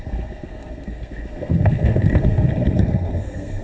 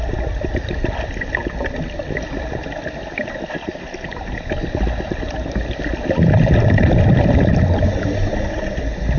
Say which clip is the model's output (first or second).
first